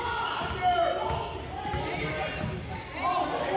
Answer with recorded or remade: recorded